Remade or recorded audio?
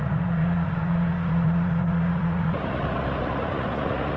remade